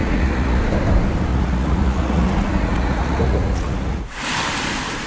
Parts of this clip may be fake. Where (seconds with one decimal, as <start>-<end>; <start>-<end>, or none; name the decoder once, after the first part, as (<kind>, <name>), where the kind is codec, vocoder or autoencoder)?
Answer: 0.0-0.6 (vocoder, Vocos); 1.3-4.2